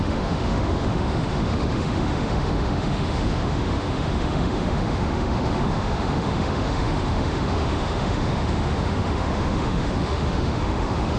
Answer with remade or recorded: remade